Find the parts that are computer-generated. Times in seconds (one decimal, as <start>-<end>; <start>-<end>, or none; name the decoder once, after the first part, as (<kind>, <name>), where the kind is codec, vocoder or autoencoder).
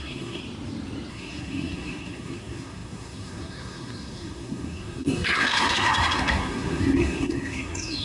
0.0-0.4 (codec, SNAC); 1.1-8.0